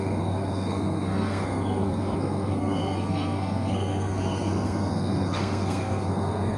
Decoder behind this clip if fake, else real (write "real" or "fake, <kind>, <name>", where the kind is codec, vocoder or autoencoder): fake, codec, SNAC